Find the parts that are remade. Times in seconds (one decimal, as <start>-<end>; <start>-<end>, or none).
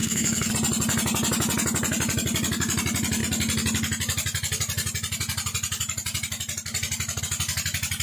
0.0-0.5